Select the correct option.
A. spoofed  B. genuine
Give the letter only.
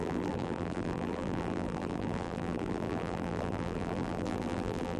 A